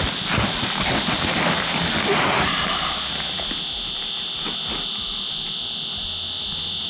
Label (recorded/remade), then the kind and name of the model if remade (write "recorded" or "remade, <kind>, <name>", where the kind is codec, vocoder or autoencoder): recorded